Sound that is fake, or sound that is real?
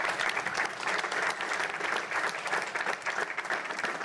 real